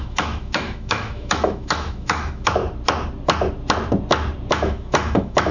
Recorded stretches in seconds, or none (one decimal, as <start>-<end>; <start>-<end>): 2.6-4.5